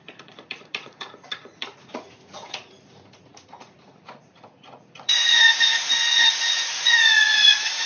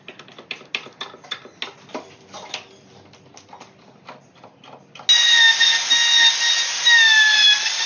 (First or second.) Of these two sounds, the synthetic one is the first